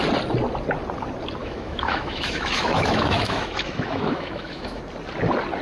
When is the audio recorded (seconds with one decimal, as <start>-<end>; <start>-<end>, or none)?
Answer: 0.0-1.4; 4.8-5.6